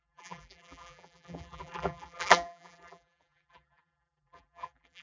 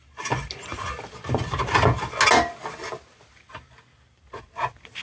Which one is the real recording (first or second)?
second